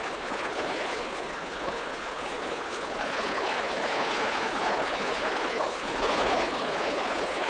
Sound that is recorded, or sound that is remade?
remade